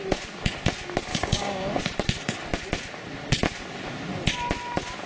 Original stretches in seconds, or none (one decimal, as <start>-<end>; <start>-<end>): 0.0-1.1; 1.8-5.1